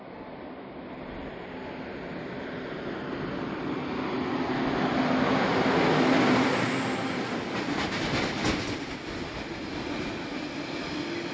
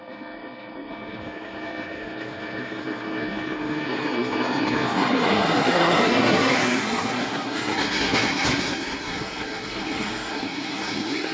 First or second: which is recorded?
first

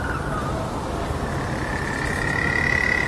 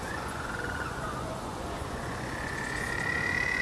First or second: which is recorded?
first